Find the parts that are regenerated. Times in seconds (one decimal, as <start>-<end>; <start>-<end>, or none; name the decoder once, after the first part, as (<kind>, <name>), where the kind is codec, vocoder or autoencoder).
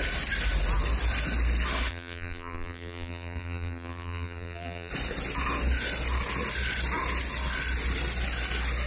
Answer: 1.9-4.9 (vocoder, BigVGAN v2)